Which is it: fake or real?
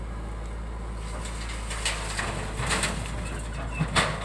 real